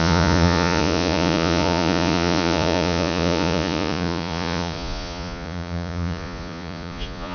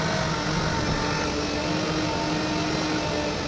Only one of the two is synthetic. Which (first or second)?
first